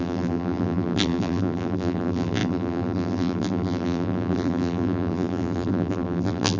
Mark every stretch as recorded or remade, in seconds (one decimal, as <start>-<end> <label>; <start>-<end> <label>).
0.0-6.6 remade